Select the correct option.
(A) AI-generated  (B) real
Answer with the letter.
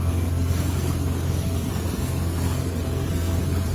A